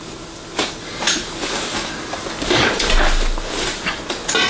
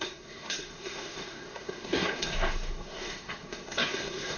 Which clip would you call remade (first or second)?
second